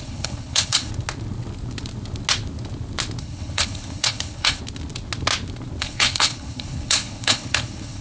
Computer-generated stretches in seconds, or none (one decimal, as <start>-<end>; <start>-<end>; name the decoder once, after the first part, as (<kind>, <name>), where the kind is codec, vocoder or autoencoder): 0.0-0.9 (codec, HILCodec); 3.2-4.6; 5.8-8.0